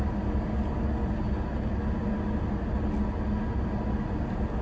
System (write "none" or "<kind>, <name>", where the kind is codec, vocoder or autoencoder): none